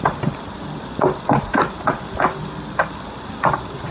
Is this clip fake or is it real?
real